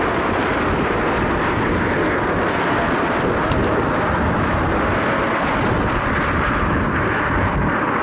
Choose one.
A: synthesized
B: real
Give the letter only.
B